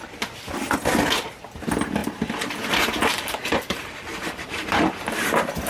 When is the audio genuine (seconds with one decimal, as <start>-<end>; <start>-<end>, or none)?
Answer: 0.0-2.0